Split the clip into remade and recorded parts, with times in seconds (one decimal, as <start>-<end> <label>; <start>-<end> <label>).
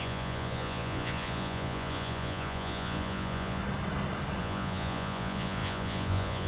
0.0-3.6 remade; 3.6-4.4 recorded; 4.4-6.5 remade